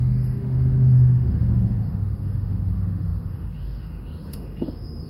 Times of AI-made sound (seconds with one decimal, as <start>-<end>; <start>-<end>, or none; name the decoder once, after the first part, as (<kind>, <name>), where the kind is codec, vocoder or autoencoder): 0.0-5.1 (autoencoder, DAC-VAE)